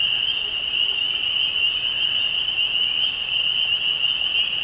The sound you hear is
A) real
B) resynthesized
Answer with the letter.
A